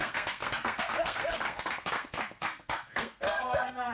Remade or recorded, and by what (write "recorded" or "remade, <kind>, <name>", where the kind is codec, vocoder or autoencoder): remade, codec, SNAC